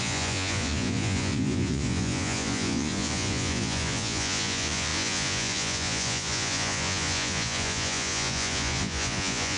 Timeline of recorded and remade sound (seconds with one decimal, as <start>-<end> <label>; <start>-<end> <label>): 0.0-9.6 remade